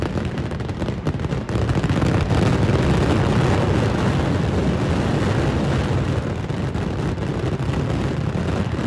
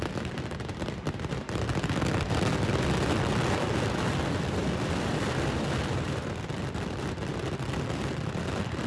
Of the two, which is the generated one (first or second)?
second